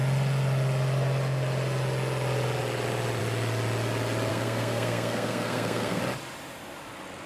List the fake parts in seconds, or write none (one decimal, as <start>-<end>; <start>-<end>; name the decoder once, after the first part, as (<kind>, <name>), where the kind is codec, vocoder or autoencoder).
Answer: 4.3-6.0 (codec, SNAC)